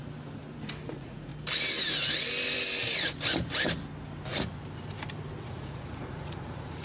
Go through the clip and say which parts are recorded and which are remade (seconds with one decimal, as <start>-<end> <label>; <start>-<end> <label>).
0.0-0.9 recorded; 0.9-1.3 remade; 1.3-5.4 recorded; 5.4-6.8 remade